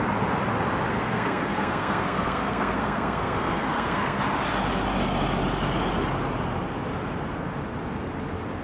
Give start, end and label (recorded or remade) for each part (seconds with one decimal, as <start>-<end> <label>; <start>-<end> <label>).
0.0-0.9 recorded; 0.9-4.2 remade; 4.2-8.6 recorded